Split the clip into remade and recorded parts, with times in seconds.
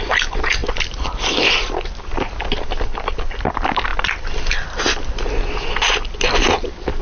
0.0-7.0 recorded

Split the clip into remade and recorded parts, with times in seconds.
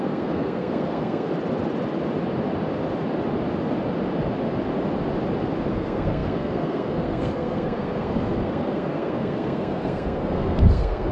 0.0-1.3 remade; 1.3-5.7 recorded; 5.7-11.1 remade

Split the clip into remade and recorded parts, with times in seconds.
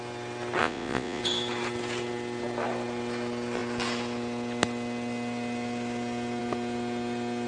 0.0-0.6 recorded; 0.6-1.2 remade; 1.2-7.5 recorded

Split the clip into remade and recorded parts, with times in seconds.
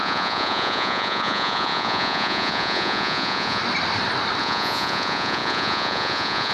0.0-3.6 remade; 3.6-4.4 recorded; 4.4-6.5 remade